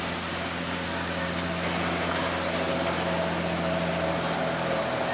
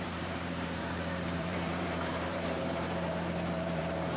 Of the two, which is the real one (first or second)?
first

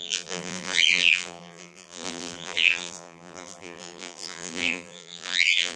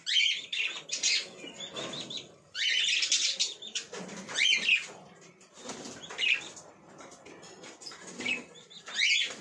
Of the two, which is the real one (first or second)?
second